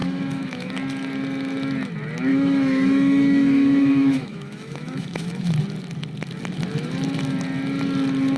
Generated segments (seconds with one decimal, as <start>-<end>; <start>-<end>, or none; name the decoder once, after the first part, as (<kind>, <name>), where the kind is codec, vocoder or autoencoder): 0.0-0.7 (autoencoder, DAC-VAE); 2.3-5.5